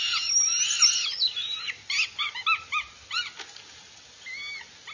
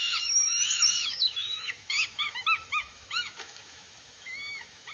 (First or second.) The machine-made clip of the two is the second